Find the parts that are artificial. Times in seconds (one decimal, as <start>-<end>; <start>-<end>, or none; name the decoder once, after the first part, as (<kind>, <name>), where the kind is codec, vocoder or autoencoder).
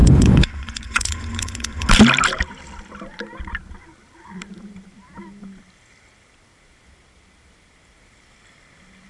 0.0-1.9 (vocoder, Vocos)